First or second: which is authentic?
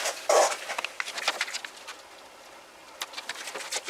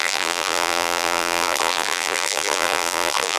first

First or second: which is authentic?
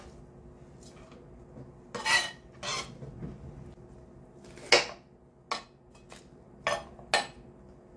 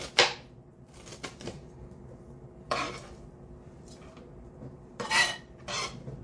first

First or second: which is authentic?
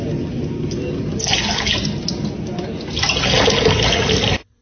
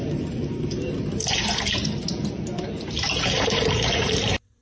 first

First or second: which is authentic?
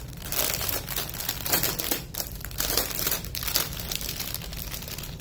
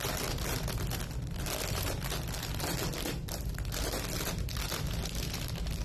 second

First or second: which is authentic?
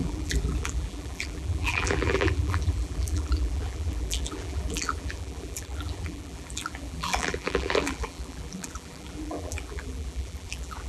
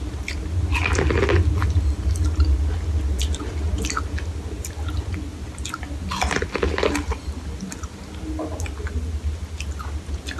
second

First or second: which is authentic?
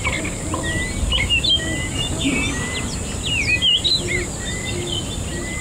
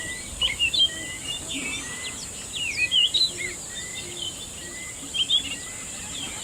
first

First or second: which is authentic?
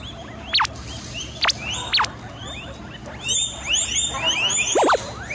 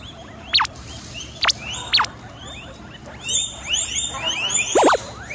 first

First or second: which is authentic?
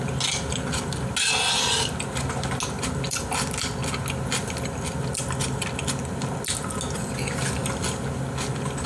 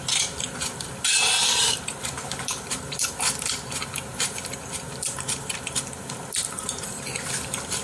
first